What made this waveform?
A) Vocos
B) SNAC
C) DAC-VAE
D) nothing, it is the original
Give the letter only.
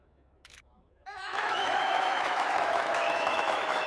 C